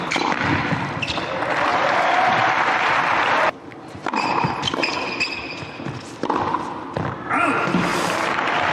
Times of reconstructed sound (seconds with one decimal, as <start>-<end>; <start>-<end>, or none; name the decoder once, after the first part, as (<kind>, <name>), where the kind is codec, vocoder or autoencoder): 1.7-4.5 (vocoder, BigVGAN v2); 7.9-8.7